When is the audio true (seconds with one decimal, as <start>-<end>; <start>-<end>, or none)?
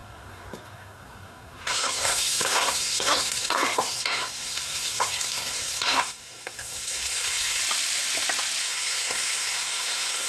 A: 7.6-8.6